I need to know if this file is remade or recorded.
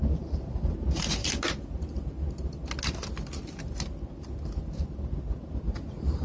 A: recorded